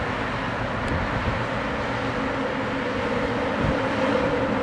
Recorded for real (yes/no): yes